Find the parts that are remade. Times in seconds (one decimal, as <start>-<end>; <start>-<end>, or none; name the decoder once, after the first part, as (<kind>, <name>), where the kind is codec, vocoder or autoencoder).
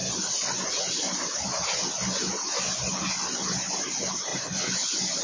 none